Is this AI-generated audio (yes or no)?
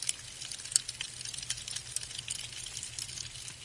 no